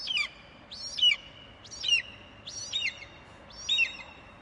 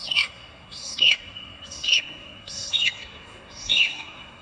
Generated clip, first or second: second